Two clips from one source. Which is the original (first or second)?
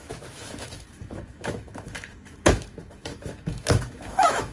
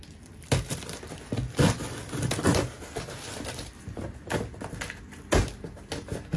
second